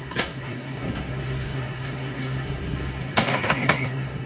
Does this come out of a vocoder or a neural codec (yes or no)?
yes